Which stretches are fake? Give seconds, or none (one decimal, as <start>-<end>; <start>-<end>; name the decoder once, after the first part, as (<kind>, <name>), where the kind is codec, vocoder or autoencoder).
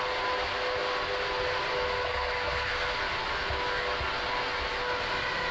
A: 2.1-3.0 (codec, SNAC)